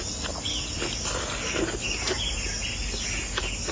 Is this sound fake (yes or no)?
no